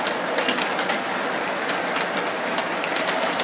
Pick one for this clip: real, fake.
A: real